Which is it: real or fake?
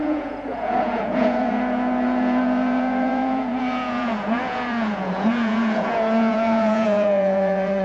fake